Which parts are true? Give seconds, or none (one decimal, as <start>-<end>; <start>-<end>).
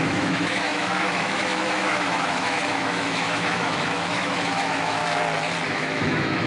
5.0-5.7